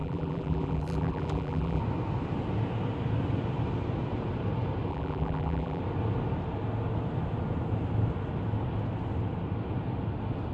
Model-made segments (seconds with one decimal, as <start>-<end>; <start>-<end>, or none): 0.0-1.8; 4.9-5.8